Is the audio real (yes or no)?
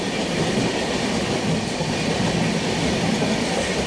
yes